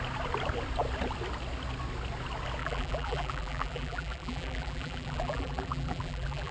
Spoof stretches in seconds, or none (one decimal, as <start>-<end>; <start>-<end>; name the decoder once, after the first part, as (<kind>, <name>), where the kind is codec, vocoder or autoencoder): 2.6-6.5 (vocoder, BigVGAN v2)